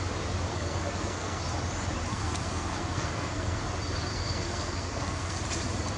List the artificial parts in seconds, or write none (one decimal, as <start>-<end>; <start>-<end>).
0.5-1.4; 2.1-3.6; 4.1-5.4